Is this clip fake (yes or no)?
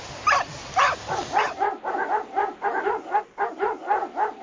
no